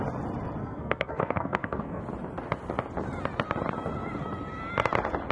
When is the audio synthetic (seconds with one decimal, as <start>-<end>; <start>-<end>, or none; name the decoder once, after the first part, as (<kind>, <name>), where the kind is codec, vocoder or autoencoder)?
0.6-2.0 (codec, SNAC)